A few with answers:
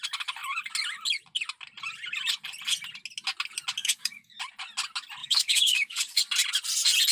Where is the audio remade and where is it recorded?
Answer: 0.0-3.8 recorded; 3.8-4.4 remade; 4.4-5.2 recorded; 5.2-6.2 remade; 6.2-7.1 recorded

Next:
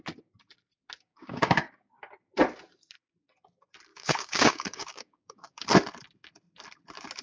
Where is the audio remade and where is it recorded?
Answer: 0.0-1.1 recorded; 1.1-2.0 remade; 2.0-3.9 recorded; 3.9-5.7 remade; 5.7-7.2 recorded

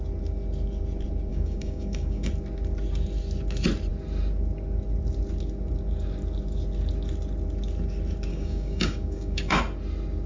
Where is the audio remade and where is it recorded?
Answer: 0.0-1.3 recorded; 1.3-2.3 remade; 2.3-8.3 recorded; 8.3-9.6 remade; 9.6-10.3 recorded

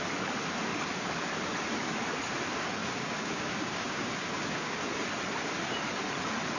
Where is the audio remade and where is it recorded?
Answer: 0.0-2.8 recorded; 2.8-4.8 remade; 4.8-6.6 recorded

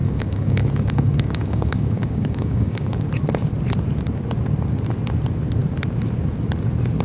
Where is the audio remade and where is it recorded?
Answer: 0.0-3.1 remade; 3.1-7.0 recorded

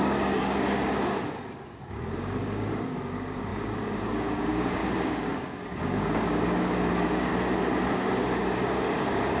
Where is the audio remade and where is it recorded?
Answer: 0.0-1.1 remade; 1.1-1.9 recorded; 1.9-7.3 remade; 7.3-7.9 recorded; 7.9-9.4 remade